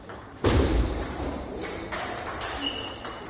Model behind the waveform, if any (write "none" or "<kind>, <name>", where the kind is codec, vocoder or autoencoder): vocoder, BigVGAN v2